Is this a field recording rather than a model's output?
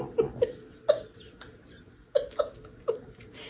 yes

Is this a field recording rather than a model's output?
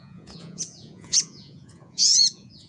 no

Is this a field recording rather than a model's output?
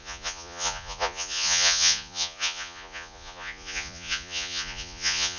no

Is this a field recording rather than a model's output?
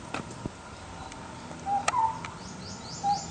yes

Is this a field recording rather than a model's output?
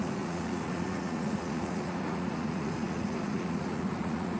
no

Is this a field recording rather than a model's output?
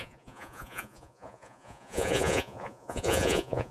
no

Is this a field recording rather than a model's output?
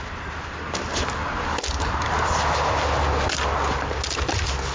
yes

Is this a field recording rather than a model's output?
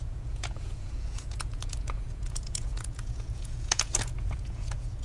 no